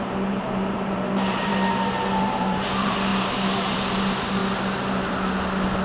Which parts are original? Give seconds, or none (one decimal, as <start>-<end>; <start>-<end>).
1.5-2.2; 4.4-5.8